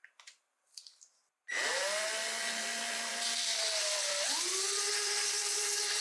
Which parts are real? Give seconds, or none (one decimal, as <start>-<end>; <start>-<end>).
0.0-1.7